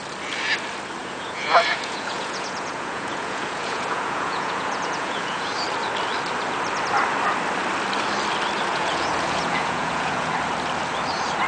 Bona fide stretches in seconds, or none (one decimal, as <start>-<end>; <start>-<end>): 0.0-1.0; 5.5-8.7; 10.3-11.5